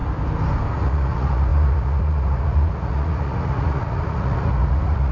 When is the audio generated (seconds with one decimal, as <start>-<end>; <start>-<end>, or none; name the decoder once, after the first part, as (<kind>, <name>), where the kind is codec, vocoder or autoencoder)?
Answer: 0.7-5.1 (vocoder, Vocos)